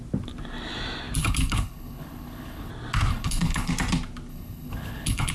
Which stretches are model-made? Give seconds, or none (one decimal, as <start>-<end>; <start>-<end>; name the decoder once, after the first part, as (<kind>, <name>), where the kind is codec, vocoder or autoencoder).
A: 1.2-2.7 (codec, HILCodec); 3.1-3.7; 4.3-5.3